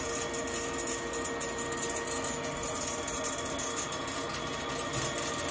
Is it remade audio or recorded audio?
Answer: recorded